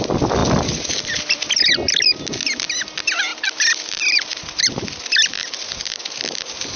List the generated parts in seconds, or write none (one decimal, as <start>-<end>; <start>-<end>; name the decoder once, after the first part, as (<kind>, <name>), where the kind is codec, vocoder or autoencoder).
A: 0.4-1.6 (vocoder, BigVGAN v2)